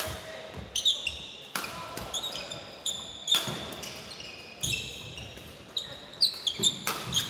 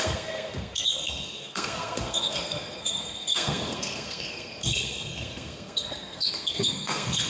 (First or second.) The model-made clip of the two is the second